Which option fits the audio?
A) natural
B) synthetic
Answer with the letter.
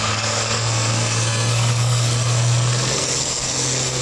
B